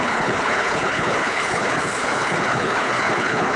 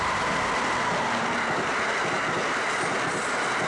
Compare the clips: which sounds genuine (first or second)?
second